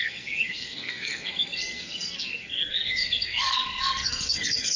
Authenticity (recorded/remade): remade